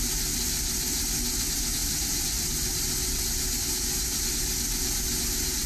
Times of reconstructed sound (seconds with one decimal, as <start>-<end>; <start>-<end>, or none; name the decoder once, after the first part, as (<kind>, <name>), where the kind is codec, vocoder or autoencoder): none